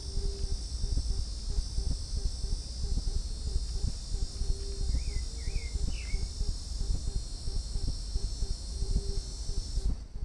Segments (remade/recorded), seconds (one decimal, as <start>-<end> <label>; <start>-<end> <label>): 0.0-10.2 recorded